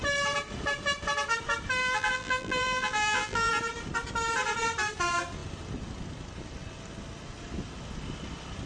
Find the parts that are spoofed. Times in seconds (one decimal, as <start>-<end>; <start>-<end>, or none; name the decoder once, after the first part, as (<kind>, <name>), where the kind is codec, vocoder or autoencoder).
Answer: 1.8-3.5 (vocoder, BigVGAN v2)